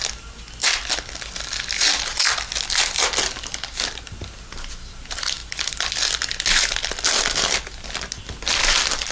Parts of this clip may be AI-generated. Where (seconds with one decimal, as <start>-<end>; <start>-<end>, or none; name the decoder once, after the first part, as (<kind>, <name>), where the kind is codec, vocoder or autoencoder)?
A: none